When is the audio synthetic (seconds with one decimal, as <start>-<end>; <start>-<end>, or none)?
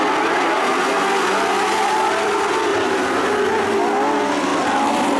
2.7-3.4; 4.5-5.2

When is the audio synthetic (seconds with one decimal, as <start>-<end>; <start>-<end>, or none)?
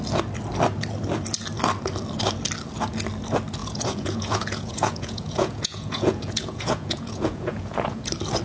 3.6-8.0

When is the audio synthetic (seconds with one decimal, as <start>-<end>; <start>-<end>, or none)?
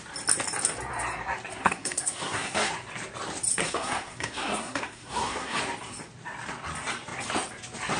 1.6-2.7; 3.6-5.6